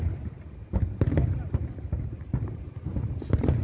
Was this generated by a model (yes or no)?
no